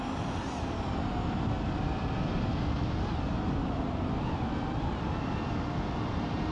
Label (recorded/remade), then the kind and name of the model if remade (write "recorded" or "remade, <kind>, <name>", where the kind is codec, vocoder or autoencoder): recorded